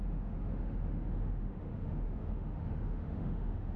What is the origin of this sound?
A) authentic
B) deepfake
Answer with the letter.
B